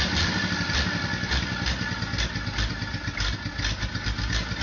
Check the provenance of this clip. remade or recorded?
recorded